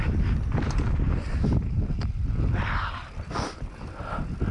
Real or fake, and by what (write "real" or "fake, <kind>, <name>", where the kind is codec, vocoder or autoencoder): real